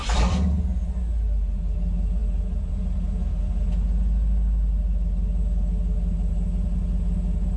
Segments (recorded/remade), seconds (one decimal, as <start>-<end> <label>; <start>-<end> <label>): 0.0-0.6 remade; 0.6-7.6 recorded